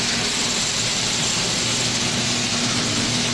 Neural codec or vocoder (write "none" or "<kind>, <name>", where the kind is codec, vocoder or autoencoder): none